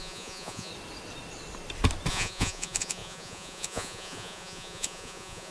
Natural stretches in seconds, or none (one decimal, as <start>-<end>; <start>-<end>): 0.7-2.1